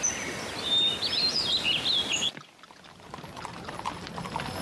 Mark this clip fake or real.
real